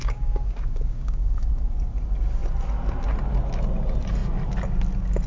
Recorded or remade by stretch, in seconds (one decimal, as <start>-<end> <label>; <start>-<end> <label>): 0.0-1.5 remade; 1.5-5.3 recorded